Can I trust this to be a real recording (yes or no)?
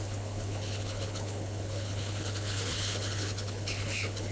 no